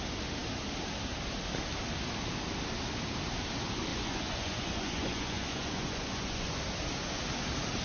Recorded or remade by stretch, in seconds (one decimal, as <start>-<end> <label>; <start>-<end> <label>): 0.0-3.9 recorded; 3.9-6.6 remade; 6.6-7.8 recorded